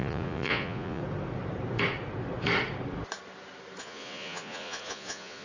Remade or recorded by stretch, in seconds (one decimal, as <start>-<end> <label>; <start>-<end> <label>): 0.0-1.0 remade; 1.0-3.8 recorded; 3.8-5.4 remade